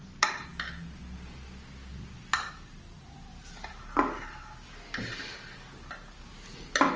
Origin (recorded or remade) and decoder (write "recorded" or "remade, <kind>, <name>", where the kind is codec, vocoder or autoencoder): recorded